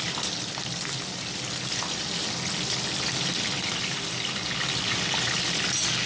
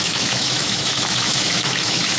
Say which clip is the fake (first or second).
second